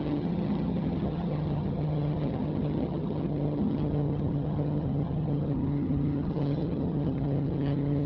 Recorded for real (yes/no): no